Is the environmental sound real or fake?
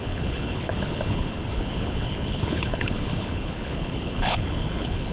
fake